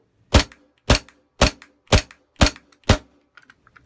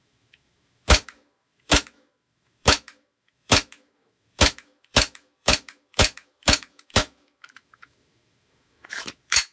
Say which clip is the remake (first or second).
second